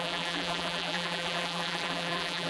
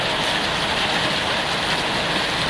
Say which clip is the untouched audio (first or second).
second